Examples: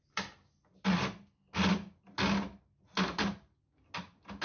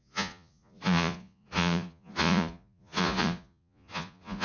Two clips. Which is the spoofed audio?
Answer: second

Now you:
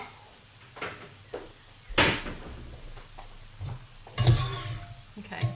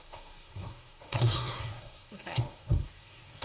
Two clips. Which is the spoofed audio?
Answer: second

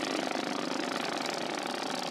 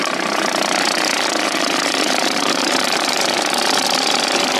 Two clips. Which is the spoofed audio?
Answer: second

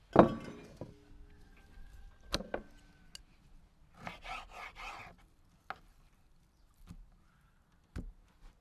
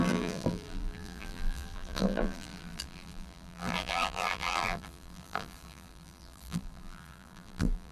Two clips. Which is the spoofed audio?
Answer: second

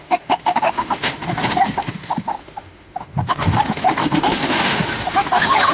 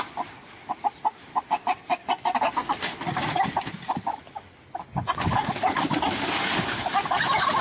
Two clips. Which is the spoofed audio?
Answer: first